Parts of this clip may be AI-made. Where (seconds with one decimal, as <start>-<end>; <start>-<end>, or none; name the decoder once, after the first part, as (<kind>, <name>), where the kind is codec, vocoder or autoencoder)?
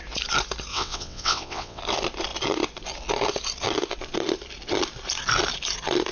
0.7-1.8 (vocoder, WaveNeXt)